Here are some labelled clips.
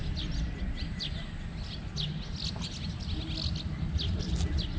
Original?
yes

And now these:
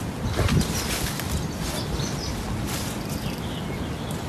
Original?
yes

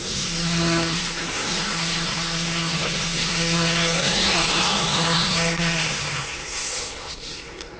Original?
no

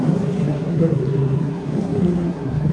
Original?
no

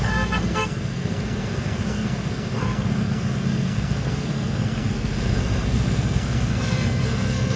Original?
no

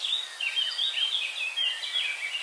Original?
yes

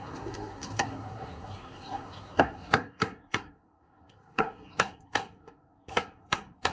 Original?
no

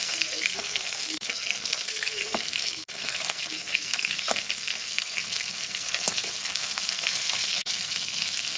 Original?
no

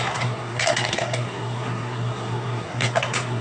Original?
no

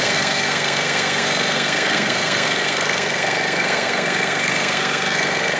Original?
no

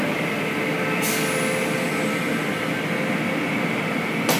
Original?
yes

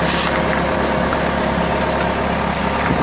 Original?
yes